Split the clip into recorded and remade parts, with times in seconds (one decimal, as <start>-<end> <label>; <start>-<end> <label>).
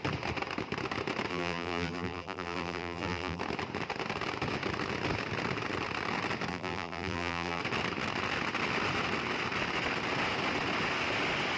0.0-1.3 recorded; 1.3-3.4 remade; 3.4-6.5 recorded; 6.5-7.6 remade; 7.6-11.6 recorded